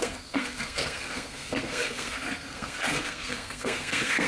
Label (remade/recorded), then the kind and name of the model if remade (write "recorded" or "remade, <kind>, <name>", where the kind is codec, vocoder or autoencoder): remade, codec, SNAC